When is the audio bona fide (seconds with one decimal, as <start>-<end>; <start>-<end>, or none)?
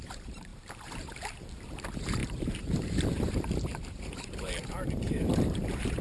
none